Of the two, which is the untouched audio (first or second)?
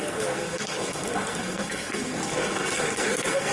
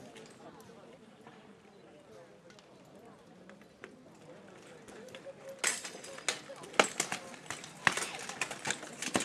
second